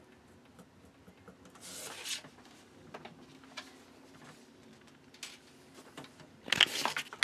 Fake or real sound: real